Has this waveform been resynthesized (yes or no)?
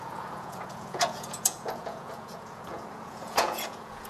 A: yes